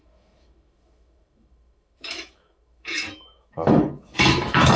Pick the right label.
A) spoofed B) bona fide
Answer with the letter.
A